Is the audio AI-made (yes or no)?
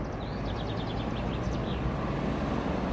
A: no